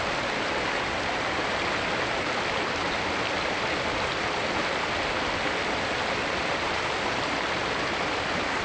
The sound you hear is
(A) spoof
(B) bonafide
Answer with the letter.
B